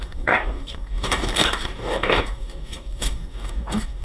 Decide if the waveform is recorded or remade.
remade